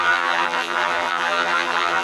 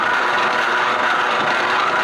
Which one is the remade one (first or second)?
first